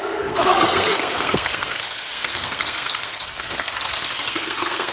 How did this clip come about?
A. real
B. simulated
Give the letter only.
B